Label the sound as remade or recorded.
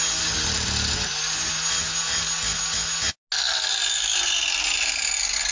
recorded